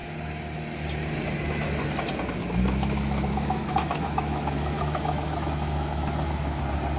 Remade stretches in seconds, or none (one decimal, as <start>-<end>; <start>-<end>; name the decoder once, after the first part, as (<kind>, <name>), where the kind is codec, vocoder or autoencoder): 2.4-6.6 (autoencoder, DAC-VAE)